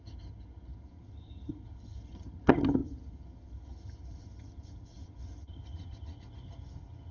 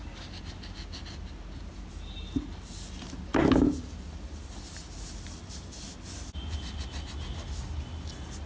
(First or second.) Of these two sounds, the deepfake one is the first